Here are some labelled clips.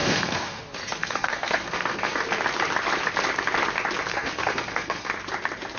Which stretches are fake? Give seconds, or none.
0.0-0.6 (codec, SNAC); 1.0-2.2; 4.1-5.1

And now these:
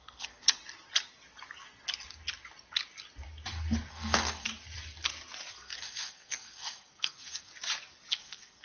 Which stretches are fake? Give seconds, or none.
0.0-0.6 (codec, SNAC); 3.9-4.5; 5.5-7.5; 8.1-8.6

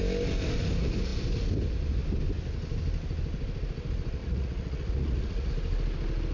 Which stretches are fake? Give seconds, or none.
4.2-5.5 (vocoder, Vocos)